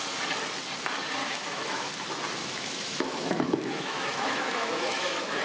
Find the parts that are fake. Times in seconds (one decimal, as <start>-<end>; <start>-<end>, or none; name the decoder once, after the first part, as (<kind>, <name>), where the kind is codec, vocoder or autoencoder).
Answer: 1.2-1.9 (autoencoder, DAC-VAE); 2.4-5.4